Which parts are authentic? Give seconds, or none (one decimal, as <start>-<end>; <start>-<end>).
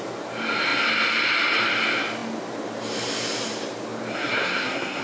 0.0-4.1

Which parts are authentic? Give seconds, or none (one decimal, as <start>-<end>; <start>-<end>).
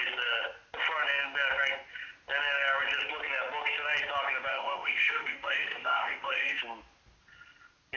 0.0-4.5; 6.6-8.0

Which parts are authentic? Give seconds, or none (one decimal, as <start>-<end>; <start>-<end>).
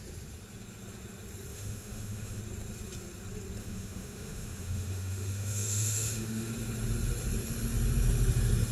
0.0-1.5; 2.4-3.6; 6.5-8.7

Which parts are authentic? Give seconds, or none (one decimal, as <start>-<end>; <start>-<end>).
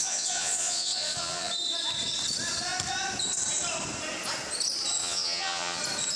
1.5-5.0; 5.8-6.2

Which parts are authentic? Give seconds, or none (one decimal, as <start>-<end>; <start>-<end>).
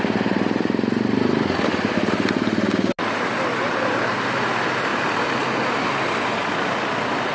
0.0-7.3